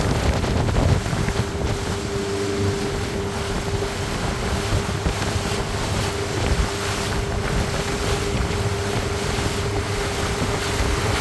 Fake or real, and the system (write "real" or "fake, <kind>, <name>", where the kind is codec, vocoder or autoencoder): real